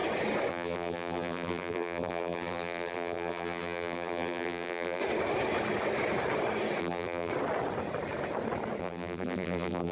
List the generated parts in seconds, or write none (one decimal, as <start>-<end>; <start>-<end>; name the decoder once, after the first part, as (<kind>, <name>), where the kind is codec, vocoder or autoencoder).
0.5-5.0 (vocoder, BigVGAN v2); 6.8-7.3; 8.8-9.9